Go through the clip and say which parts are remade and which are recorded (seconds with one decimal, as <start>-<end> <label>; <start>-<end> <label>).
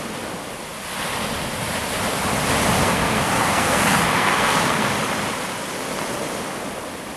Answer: 0.0-2.8 recorded; 2.8-4.9 remade; 4.9-7.2 recorded